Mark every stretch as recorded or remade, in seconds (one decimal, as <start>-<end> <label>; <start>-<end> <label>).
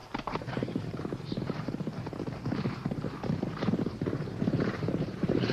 0.0-0.5 recorded; 0.5-1.9 remade; 1.9-2.6 recorded; 2.6-5.5 remade